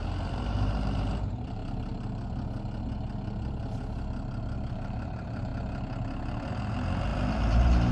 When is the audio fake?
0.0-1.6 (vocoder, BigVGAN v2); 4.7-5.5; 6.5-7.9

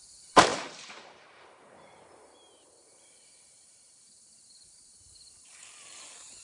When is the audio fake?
0.0-5.6 (vocoder, BigVGAN v2)

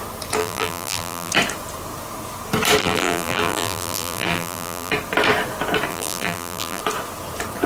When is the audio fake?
0.4-1.3 (vocoder, BigVGAN v2); 2.8-4.9; 5.9-6.8

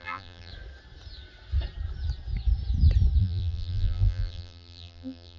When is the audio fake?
0.0-0.5 (vocoder, BigVGAN v2); 3.2-5.4

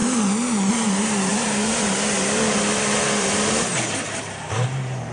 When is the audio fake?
0.7-5.1 (vocoder, BigVGAN v2)

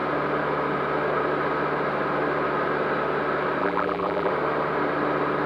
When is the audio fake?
3.6-4.3 (vocoder, BigVGAN v2)

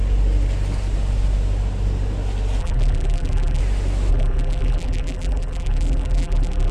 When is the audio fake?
2.6-3.6 (vocoder, BigVGAN v2); 4.1-6.7

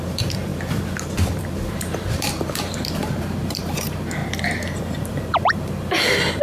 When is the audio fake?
0.0-0.5 (vocoder, BigVGAN v2); 1.4-4.2; 4.8-6.4